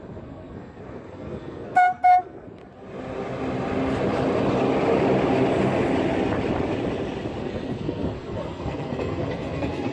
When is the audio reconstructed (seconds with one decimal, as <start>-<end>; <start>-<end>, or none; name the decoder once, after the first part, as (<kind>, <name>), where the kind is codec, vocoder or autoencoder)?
0.0-2.6 (codec, SNAC); 7.4-9.9